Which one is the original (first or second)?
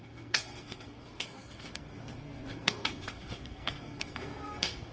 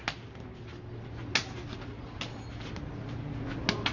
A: second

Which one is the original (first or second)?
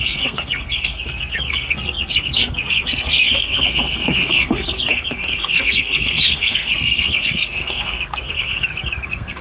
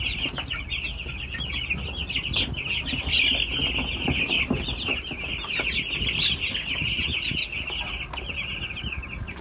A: second